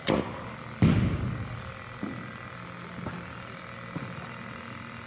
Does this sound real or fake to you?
real